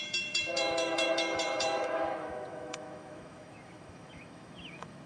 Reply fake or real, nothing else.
fake